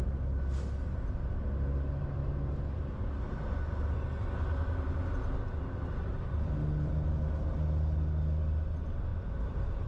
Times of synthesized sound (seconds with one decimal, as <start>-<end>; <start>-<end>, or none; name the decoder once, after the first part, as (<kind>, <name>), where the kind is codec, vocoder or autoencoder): none